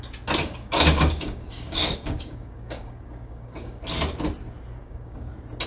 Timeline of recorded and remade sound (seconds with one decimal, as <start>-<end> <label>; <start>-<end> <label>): 0.0-0.4 recorded; 0.4-3.8 remade; 3.8-4.8 recorded; 4.8-5.3 remade; 5.3-5.7 recorded